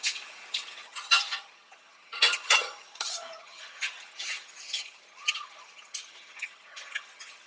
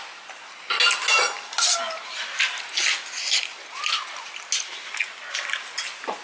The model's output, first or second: first